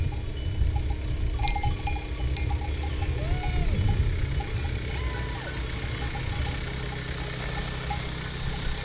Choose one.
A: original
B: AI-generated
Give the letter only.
A